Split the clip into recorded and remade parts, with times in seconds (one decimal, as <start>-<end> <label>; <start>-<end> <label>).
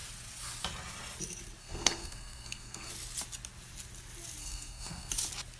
0.0-1.6 recorded; 1.6-2.9 remade; 2.9-4.4 recorded; 4.4-5.1 remade; 5.1-5.6 recorded